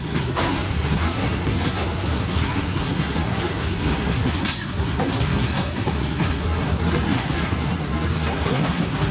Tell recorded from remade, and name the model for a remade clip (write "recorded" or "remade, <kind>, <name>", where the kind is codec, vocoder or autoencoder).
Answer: remade, codec, SNAC